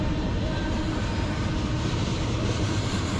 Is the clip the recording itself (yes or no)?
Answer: no